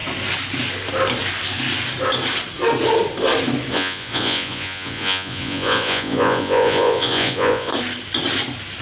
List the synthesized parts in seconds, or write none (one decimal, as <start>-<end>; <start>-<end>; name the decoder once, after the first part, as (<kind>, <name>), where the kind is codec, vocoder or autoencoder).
3.7-7.7 (vocoder, Vocos)